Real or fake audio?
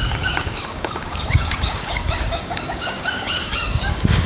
fake